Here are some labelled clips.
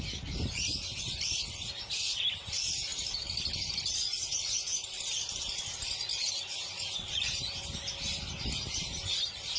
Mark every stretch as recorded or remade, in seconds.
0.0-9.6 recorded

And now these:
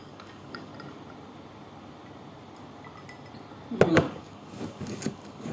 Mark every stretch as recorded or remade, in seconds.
0.0-0.7 remade; 0.7-3.9 recorded; 3.9-5.5 remade

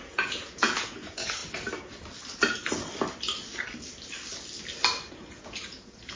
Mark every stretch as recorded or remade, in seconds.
0.0-1.4 remade; 1.4-5.1 recorded; 5.1-6.2 remade

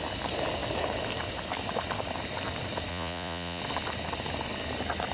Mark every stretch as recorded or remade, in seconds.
0.0-2.9 recorded; 2.9-3.6 remade; 3.6-5.1 recorded